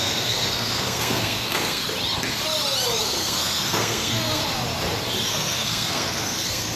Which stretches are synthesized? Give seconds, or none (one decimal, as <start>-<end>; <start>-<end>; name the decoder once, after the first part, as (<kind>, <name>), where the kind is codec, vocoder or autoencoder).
0.0-1.8 (codec, SNAC); 3.0-4.4; 5.3-6.8